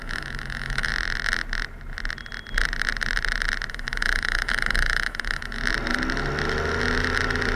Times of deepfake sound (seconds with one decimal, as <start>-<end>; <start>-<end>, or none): 0.0-0.9; 3.7-5.6